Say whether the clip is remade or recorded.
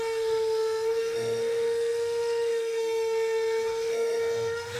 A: remade